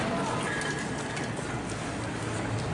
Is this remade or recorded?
recorded